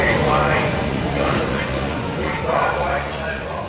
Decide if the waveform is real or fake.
fake